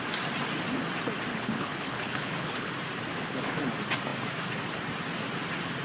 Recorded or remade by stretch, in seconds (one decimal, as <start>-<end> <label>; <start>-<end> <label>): 0.0-1.3 recorded; 1.3-2.7 remade; 2.7-3.1 recorded; 3.1-3.6 remade; 3.6-5.8 recorded